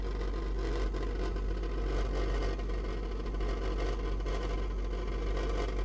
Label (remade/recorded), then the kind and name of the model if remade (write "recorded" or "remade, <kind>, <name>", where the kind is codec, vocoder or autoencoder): recorded